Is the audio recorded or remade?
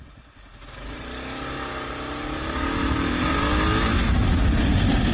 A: recorded